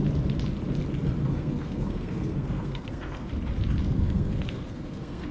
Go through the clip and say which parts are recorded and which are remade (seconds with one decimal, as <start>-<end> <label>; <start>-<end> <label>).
0.0-1.2 recorded; 1.2-3.3 remade; 3.3-3.8 recorded; 3.8-5.3 remade